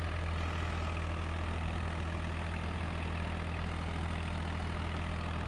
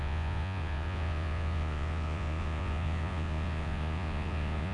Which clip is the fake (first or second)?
second